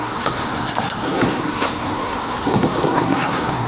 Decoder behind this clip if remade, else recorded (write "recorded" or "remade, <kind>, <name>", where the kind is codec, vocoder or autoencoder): remade, codec, SNAC